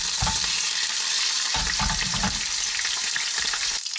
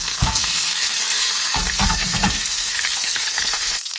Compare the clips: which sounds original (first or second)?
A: first